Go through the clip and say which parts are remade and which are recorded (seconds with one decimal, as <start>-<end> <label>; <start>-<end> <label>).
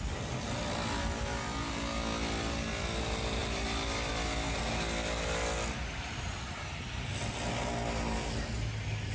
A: 0.0-9.1 recorded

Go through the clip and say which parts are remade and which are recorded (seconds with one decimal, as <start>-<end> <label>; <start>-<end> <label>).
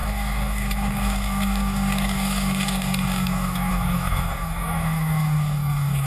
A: 0.0-6.1 remade